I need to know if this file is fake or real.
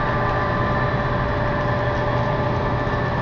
real